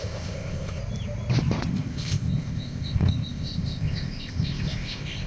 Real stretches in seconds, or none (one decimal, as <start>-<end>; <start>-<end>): 0.8-1.7